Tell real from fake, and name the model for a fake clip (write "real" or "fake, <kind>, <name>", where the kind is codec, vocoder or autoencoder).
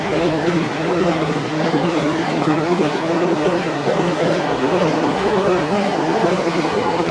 fake, codec, SNAC